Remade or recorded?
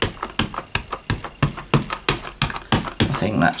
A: recorded